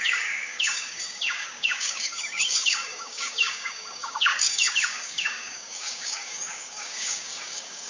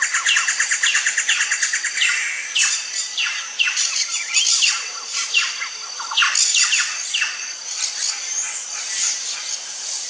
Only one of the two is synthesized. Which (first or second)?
first